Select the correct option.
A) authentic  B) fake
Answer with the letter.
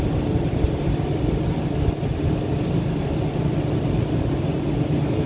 A